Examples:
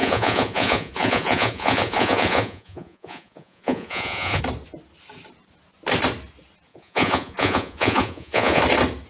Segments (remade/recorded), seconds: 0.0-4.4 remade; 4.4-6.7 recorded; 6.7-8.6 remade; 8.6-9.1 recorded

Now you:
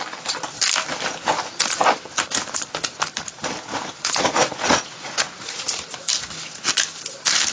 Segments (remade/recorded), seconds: 0.0-3.7 recorded; 3.7-5.6 remade; 5.6-7.5 recorded

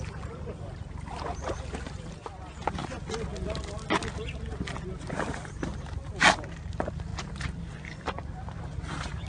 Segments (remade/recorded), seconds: 0.0-2.8 remade; 2.8-5.1 recorded; 5.1-5.7 remade; 5.7-6.5 recorded; 6.5-7.1 remade; 7.1-7.6 recorded; 7.6-9.3 remade

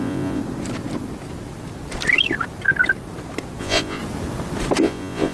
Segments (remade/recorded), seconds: 0.0-0.4 remade; 0.4-3.6 recorded; 3.6-4.0 remade; 4.0-4.8 recorded; 4.8-5.3 remade